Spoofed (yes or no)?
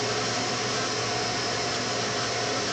no